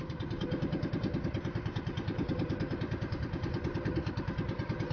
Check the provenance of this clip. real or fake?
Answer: fake